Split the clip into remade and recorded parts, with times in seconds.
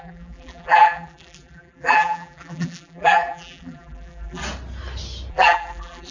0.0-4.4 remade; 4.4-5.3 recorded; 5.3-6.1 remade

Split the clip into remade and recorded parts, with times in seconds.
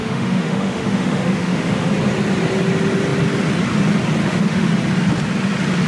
0.0-1.9 remade; 1.9-4.2 recorded; 4.2-4.7 remade; 4.7-5.9 recorded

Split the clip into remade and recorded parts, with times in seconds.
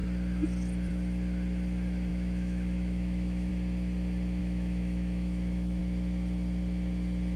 0.0-2.1 recorded; 2.1-3.5 remade; 3.5-4.4 recorded; 4.4-5.8 remade; 5.8-7.4 recorded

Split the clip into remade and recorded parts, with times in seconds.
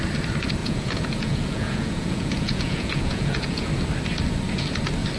0.0-0.6 recorded; 0.6-3.7 remade; 3.7-5.2 recorded